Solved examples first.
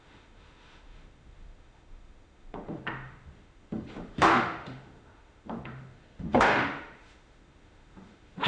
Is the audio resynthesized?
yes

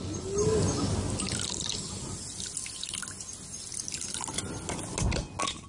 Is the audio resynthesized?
no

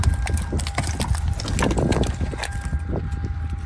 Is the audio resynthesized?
no